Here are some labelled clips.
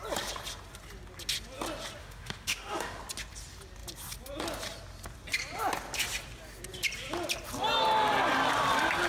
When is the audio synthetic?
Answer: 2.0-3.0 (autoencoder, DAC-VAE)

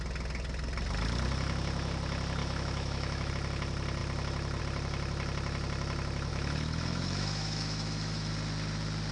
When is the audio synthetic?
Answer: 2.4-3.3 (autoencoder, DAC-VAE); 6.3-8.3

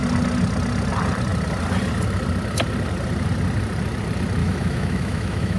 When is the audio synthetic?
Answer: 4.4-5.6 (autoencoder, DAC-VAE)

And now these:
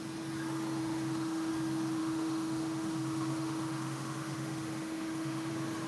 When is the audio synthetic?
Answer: 0.8-1.5 (autoencoder, DAC-VAE); 2.0-5.5

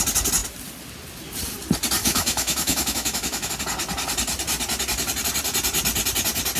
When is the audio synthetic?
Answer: 2.0-3.5 (autoencoder, DAC-VAE)